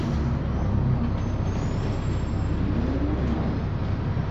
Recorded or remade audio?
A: recorded